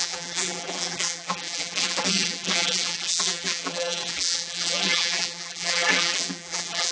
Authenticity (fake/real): fake